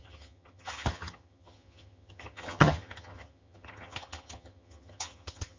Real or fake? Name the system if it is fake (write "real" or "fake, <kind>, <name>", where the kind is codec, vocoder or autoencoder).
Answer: fake, vocoder, HiFi-GAN